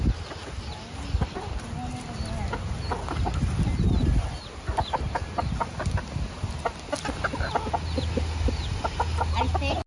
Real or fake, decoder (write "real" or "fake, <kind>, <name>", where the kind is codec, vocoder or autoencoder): real